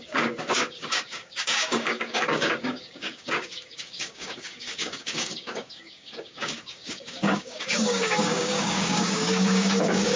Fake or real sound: fake